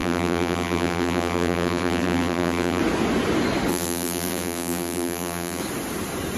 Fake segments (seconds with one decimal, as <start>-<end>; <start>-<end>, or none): 0.0-2.8; 3.7-5.6